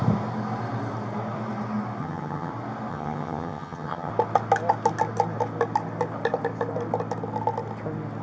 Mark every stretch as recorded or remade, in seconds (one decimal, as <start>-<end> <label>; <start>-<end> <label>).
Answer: 0.0-2.0 recorded; 2.0-2.5 remade; 2.5-2.9 recorded; 2.9-4.1 remade; 4.1-8.2 recorded